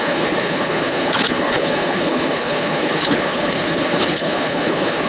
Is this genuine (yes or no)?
no